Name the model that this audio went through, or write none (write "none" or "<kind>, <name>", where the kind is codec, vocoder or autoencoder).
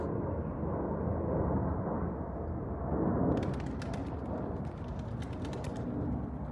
none